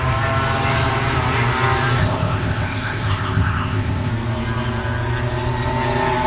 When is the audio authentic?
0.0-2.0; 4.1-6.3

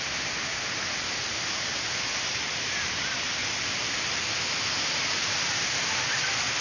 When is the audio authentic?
0.0-6.6